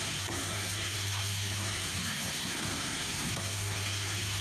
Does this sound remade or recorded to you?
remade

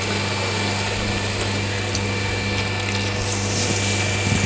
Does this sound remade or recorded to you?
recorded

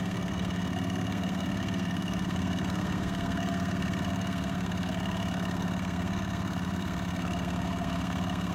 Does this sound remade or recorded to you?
remade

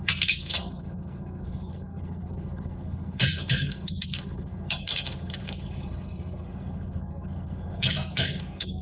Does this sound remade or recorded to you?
remade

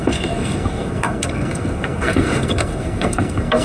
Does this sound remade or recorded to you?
remade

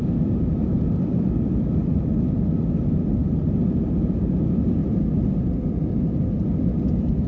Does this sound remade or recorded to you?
recorded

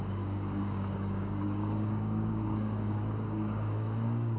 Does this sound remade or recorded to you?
remade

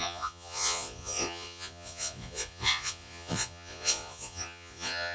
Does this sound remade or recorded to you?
remade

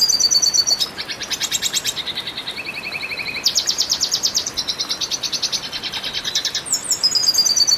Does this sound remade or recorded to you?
recorded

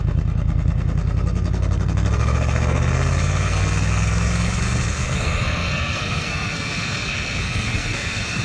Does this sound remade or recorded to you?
remade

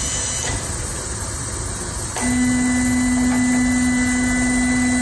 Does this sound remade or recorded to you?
recorded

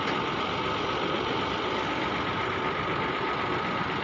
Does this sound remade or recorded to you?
recorded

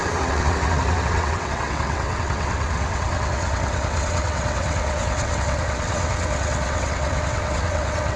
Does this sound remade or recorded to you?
remade